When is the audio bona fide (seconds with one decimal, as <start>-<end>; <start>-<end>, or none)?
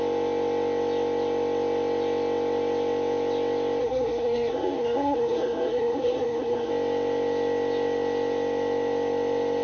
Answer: 0.0-3.8; 6.7-9.6